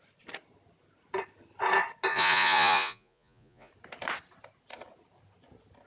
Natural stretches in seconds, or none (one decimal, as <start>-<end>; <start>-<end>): 0.0-2.1; 3.7-5.9